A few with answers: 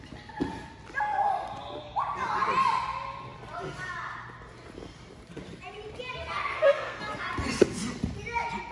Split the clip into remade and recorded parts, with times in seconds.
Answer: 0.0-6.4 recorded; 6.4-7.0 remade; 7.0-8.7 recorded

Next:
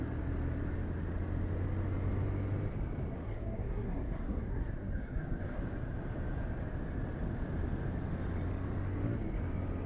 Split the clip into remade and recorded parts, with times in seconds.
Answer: 0.0-3.1 recorded; 3.1-5.6 remade; 5.6-9.9 recorded

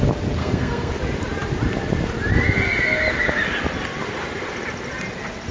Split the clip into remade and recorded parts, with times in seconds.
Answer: 0.0-0.4 recorded; 0.4-0.9 remade; 0.9-5.5 recorded

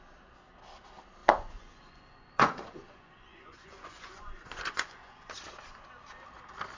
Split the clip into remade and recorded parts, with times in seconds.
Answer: 0.0-1.2 recorded; 1.2-5.3 remade; 5.3-6.8 recorded